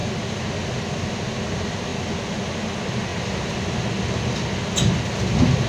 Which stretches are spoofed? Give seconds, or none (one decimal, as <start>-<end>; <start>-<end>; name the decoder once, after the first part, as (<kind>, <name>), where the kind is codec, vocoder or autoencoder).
none